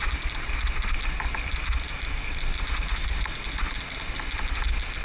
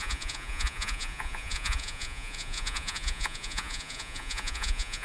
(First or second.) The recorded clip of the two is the first